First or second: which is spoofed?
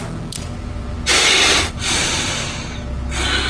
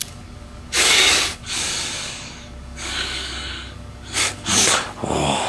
second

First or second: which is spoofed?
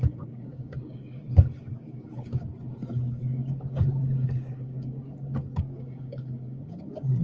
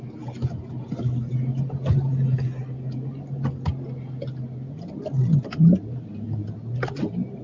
first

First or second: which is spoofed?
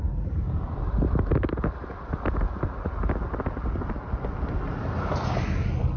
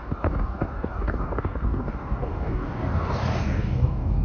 second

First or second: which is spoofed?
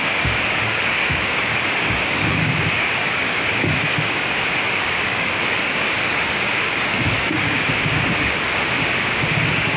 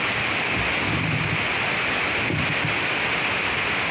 first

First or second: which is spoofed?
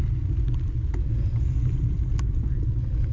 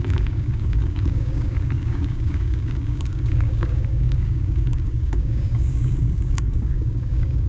second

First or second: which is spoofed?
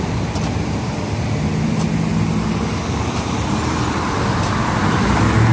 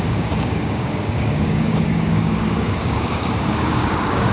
second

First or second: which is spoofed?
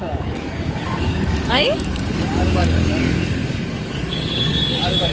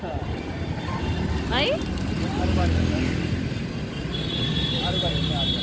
first